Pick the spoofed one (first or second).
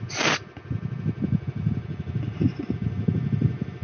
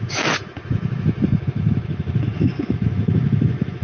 second